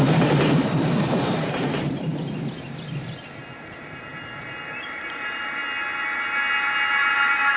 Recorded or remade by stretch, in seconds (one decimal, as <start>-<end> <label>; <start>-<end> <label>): 0.0-5.6 remade; 5.6-7.6 recorded